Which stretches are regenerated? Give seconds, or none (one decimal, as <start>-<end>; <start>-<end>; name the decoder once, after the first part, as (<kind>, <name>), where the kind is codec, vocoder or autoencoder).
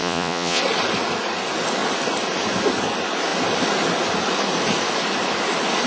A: 0.0-0.6 (vocoder, Vocos)